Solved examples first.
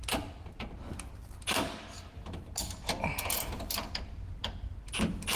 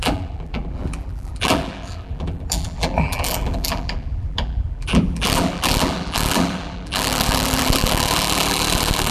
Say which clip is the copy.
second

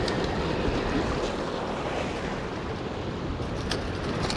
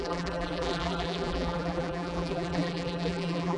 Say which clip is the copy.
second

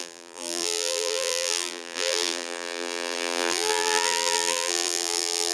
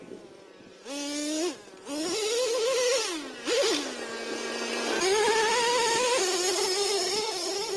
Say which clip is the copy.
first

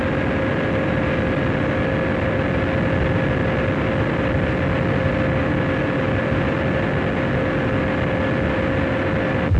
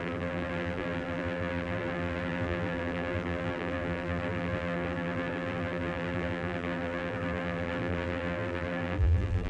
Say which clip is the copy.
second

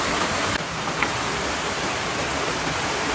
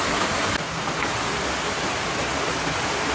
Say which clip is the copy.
first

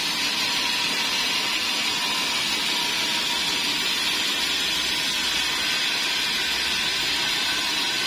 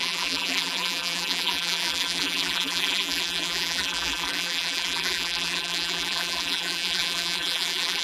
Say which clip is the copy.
second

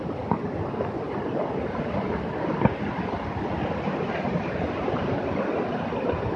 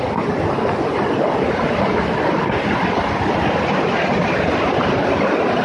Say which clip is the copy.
second